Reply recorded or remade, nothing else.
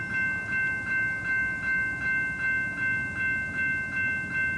recorded